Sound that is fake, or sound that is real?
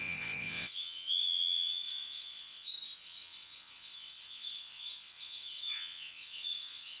fake